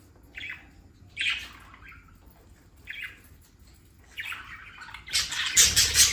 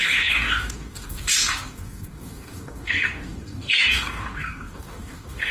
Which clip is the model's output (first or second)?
second